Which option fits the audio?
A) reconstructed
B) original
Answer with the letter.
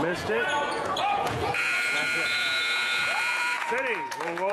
A